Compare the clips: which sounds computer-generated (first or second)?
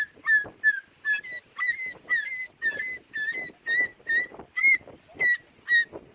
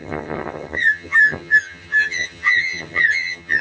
second